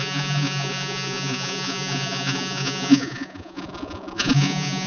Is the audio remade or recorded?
remade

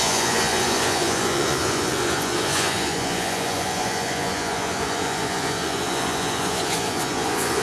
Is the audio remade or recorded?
remade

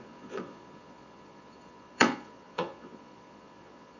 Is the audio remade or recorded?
remade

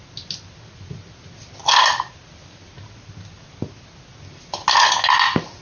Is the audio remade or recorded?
recorded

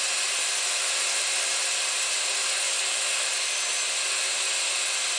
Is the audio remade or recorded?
recorded